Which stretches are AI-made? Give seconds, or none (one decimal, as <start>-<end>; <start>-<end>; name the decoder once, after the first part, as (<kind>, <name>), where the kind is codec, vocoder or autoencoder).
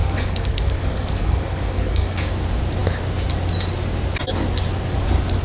0.0-2.3 (codec, SNAC)